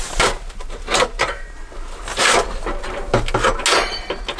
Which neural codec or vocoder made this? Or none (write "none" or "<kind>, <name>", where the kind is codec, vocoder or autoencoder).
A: none